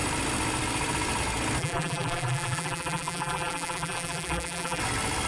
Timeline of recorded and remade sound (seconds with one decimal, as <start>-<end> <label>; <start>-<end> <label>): 0.0-1.6 recorded; 1.6-4.8 remade; 4.8-5.3 recorded

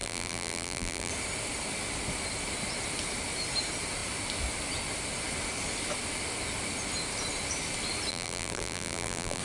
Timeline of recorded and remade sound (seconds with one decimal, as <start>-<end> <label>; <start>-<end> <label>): 0.0-1.1 remade; 1.1-8.1 recorded; 8.1-9.4 remade

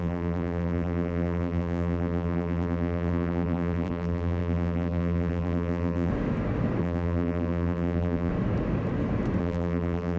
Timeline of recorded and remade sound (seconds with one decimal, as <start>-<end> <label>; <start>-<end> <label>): 0.0-6.1 remade; 6.1-6.8 recorded; 6.8-8.3 remade; 8.3-9.4 recorded; 9.4-10.2 remade